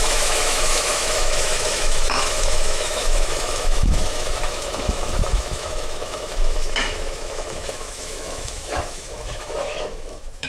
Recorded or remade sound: remade